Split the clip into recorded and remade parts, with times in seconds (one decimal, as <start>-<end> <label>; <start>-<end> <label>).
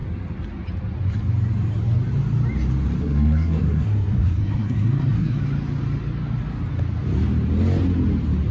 0.0-3.0 recorded; 3.0-5.4 remade; 5.4-8.5 recorded